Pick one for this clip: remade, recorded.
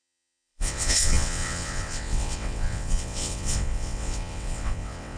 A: remade